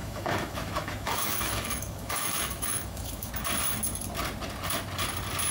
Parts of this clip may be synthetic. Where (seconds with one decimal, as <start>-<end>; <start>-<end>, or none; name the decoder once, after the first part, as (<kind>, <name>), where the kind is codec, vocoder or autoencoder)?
0.0-3.3 (autoencoder, DAC-VAE)